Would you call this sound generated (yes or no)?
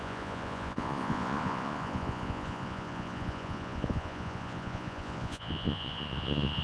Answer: yes